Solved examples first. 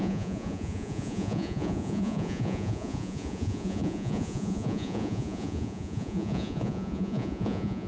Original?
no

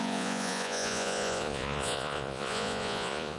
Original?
no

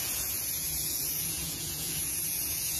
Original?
no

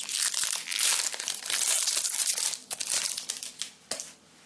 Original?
yes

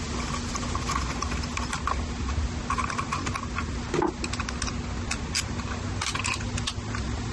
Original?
yes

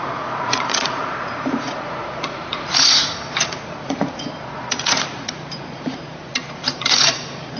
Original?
no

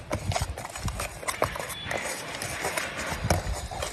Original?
yes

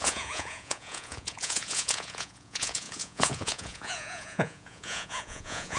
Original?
no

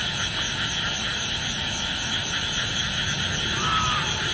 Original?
yes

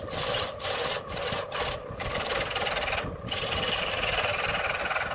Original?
yes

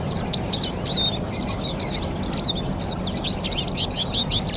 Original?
yes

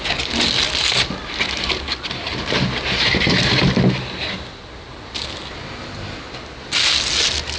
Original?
yes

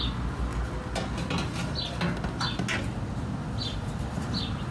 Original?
yes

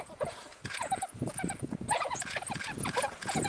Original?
no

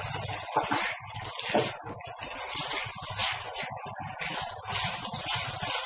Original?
yes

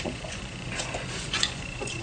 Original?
no